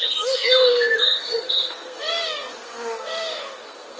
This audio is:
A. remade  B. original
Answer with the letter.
A